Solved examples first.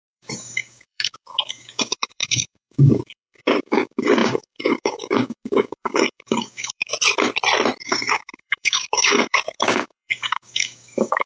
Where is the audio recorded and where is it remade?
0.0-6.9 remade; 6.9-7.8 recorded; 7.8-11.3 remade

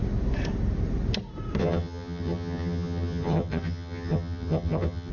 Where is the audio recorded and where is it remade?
0.0-1.6 recorded; 1.6-5.1 remade